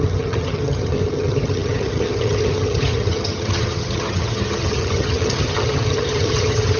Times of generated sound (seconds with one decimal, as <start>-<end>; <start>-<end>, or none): 0.0-6.8